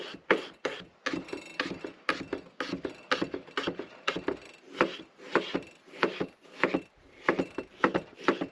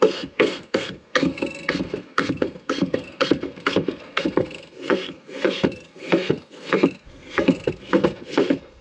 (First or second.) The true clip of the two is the first